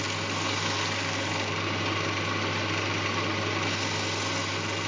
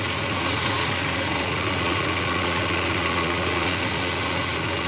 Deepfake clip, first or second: second